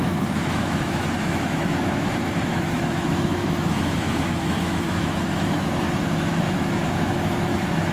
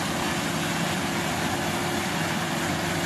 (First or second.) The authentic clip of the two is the second